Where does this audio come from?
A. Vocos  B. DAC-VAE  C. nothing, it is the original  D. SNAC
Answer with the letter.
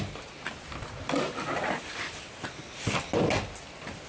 C